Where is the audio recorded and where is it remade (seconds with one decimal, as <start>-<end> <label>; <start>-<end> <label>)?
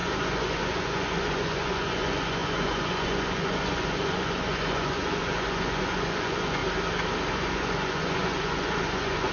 0.0-6.6 remade; 6.6-7.3 recorded; 7.3-9.3 remade